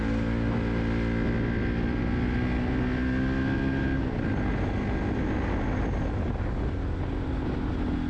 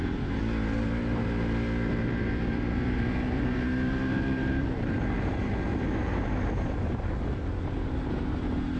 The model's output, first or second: second